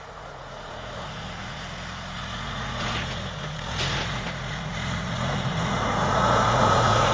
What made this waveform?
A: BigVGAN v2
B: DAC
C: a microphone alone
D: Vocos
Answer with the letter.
D